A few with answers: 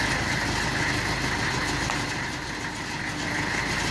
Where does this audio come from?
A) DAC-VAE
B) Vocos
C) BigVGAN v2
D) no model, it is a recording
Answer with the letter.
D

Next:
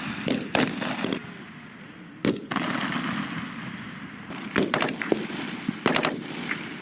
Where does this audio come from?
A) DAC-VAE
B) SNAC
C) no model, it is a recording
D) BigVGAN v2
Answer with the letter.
C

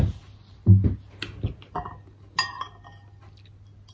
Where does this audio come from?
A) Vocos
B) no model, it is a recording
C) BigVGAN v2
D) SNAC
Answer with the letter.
B